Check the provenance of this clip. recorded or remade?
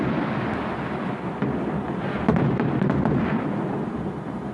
remade